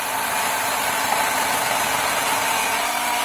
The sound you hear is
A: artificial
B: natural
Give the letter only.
A